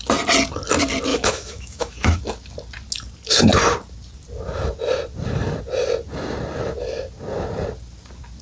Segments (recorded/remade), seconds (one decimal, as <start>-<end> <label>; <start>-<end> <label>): 0.0-1.1 recorded; 1.1-2.2 remade; 2.2-8.4 recorded

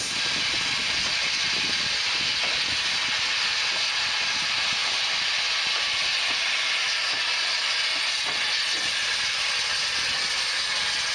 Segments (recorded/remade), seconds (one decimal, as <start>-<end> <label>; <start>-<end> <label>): 0.0-11.1 recorded

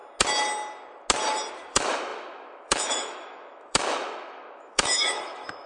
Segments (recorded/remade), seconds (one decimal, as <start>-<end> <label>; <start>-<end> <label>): 0.0-1.7 recorded; 1.7-5.7 remade

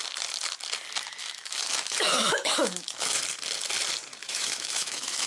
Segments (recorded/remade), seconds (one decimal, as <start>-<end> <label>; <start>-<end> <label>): 0.0-1.2 recorded; 1.2-3.2 remade; 3.2-4.2 recorded; 4.2-5.3 remade

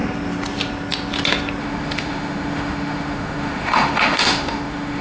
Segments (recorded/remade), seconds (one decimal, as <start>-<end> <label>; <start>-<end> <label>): 0.0-1.6 recorded; 1.6-5.0 remade